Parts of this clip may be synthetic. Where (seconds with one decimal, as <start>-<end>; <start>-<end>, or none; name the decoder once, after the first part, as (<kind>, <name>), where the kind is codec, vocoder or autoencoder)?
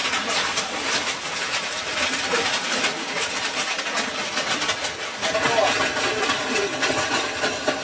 0.0-3.8 (vocoder, BigVGAN v2)